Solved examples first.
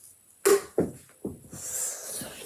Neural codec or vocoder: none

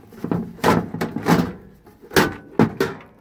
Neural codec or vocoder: none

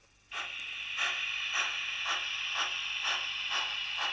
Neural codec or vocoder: none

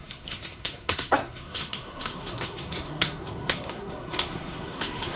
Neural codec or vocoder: codec, SNAC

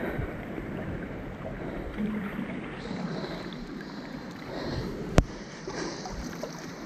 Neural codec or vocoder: vocoder, BigVGAN v2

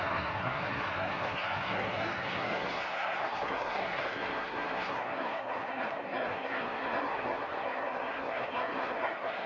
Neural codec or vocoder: codec, SNAC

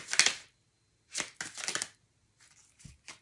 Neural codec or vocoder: none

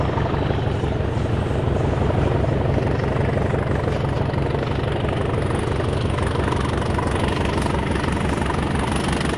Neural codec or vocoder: none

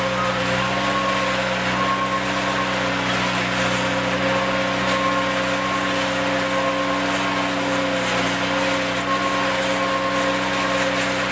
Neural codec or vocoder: none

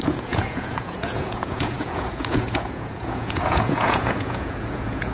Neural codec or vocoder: vocoder, Vocos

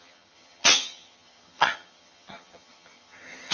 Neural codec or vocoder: vocoder, HiFi-GAN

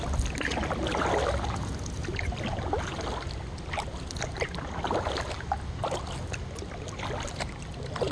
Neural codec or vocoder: none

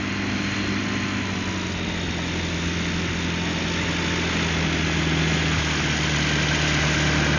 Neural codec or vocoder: none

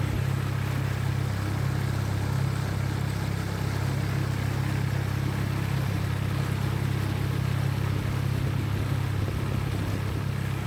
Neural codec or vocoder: none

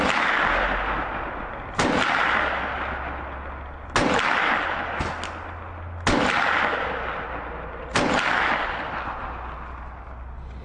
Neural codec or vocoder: none